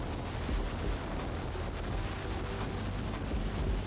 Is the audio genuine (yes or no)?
yes